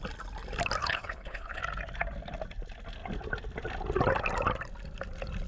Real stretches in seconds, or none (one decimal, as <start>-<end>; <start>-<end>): 0.0-0.8; 1.6-5.5